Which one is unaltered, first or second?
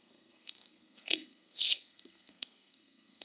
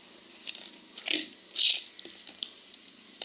second